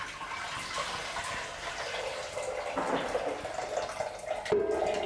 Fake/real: real